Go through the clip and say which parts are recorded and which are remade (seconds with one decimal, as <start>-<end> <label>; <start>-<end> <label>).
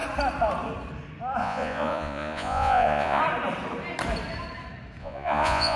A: 0.0-1.4 recorded; 1.4-3.2 remade; 3.2-5.0 recorded; 5.0-5.8 remade